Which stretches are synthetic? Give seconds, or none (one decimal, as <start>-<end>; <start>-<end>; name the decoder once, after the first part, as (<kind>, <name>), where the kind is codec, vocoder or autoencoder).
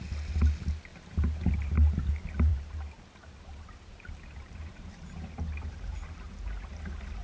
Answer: 0.9-1.7 (vocoder, BigVGAN v2); 2.5-6.8